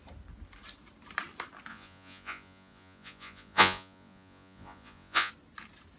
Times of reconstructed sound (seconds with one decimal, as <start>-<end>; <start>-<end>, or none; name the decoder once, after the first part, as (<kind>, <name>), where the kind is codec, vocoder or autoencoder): 1.7-5.3 (vocoder, Vocos)